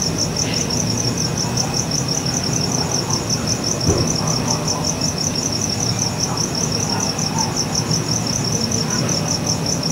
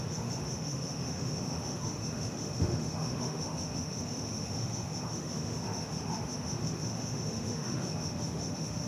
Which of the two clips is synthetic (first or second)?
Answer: second